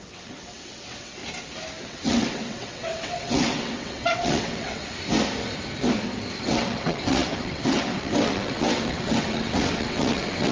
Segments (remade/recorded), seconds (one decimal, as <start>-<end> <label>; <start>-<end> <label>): 0.0-1.2 remade; 1.2-1.8 recorded; 1.8-4.8 remade; 4.8-6.4 recorded; 6.4-10.5 remade